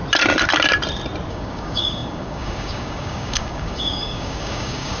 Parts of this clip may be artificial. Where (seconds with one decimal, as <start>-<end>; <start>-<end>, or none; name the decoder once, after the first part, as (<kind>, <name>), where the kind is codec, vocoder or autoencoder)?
1.3-5.0 (codec, DAC)